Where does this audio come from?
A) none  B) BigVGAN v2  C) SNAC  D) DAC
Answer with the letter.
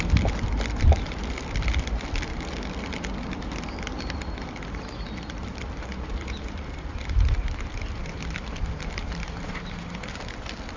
B